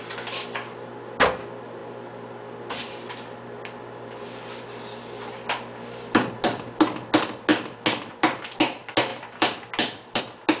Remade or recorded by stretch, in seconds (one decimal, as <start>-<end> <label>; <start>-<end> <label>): 0.0-9.1 recorded; 9.1-10.2 remade; 10.2-10.6 recorded